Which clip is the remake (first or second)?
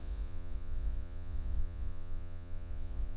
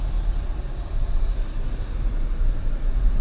first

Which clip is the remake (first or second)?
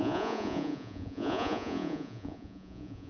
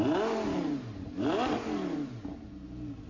first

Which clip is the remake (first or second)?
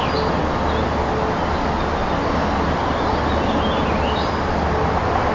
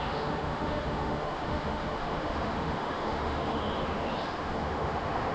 second